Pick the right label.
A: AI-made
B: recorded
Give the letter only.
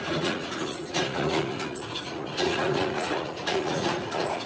A